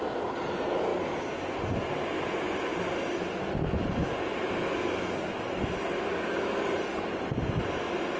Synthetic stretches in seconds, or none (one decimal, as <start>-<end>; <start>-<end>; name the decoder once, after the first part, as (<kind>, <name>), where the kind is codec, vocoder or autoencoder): none